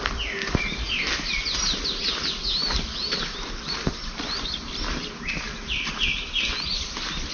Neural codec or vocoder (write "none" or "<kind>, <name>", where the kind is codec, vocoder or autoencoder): none